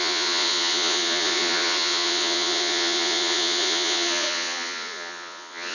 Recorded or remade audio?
remade